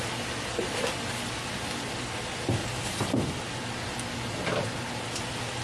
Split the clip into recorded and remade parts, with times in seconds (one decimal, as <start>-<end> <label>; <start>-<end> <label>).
0.0-5.6 recorded